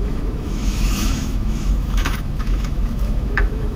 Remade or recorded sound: remade